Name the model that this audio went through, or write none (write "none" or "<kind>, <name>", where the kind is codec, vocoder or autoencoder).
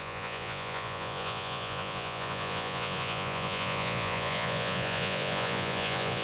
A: vocoder, Vocos